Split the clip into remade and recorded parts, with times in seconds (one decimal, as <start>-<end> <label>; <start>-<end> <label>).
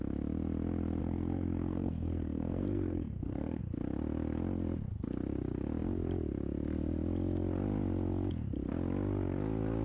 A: 0.0-1.0 recorded; 1.0-3.6 remade; 3.6-9.8 recorded